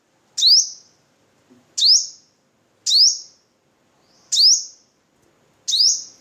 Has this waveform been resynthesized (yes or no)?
no